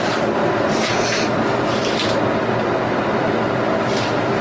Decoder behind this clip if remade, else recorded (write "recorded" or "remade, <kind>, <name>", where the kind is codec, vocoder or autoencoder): recorded